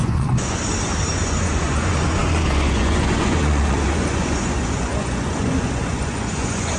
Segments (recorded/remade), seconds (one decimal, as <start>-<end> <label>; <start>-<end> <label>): 0.0-0.6 remade; 0.6-1.1 recorded; 1.1-6.8 remade